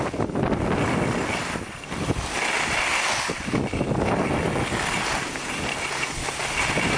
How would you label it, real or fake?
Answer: real